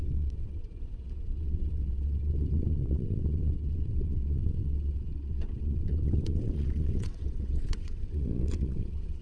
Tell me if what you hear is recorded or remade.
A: remade